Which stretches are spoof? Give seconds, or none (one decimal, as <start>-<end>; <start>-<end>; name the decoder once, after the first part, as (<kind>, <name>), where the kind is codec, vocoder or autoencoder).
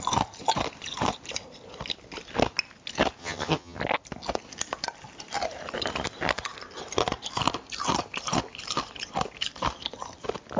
3.2-3.8 (vocoder, HiFi-GAN)